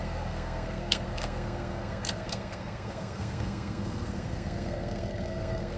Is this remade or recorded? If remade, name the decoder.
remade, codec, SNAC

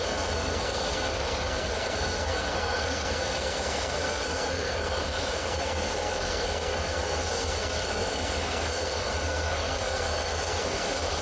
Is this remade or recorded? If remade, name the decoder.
remade, codec, SNAC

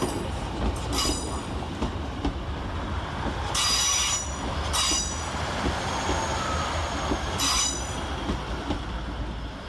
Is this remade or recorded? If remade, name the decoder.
recorded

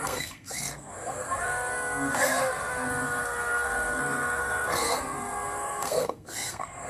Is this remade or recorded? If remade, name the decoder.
remade, codec, SNAC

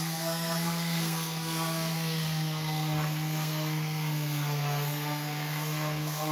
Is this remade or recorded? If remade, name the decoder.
remade, codec, SNAC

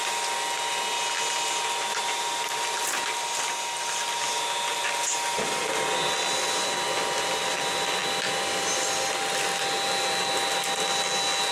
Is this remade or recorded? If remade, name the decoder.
recorded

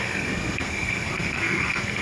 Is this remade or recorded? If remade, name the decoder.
remade, codec, SNAC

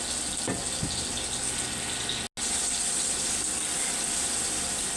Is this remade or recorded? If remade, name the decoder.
recorded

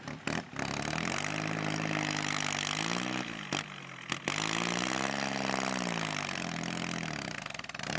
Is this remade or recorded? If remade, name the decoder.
recorded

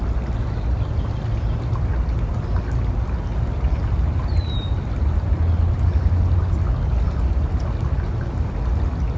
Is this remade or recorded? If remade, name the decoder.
recorded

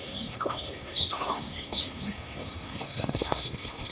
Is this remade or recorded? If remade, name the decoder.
remade, codec, SNAC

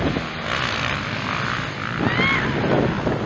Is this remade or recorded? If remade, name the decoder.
recorded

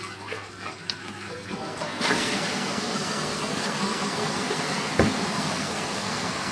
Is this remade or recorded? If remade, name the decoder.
remade, codec, SNAC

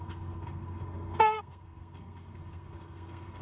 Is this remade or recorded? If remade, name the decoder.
remade, codec, SNAC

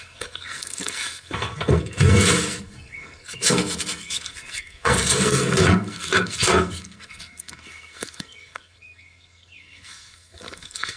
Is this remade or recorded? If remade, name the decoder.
remade, codec, SNAC